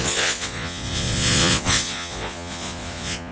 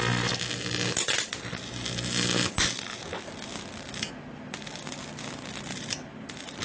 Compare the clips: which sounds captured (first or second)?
second